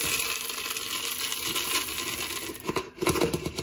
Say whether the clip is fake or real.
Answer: real